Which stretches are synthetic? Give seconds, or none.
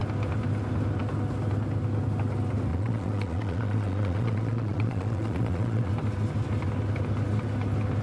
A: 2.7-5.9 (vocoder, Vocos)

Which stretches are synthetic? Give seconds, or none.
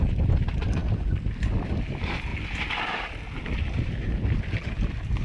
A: none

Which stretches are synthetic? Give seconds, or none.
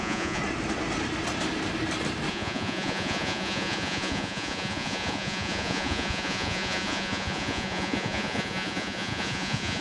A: 0.0-0.4 (vocoder, Vocos); 2.3-9.8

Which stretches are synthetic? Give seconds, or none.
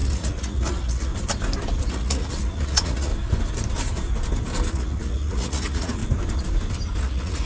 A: 0.0-1.1 (vocoder, Vocos); 1.9-3.1; 4.7-6.0; 7.0-7.5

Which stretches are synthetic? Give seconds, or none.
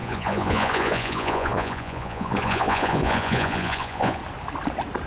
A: 0.0-4.2 (vocoder, Vocos)